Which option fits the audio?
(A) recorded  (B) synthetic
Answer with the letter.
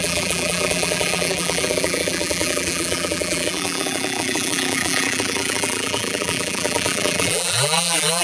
B